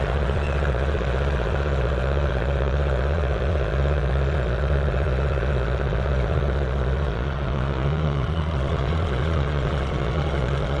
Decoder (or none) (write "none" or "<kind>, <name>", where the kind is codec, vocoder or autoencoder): vocoder, Vocos